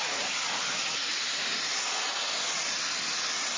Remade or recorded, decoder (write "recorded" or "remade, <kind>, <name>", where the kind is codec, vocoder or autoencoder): recorded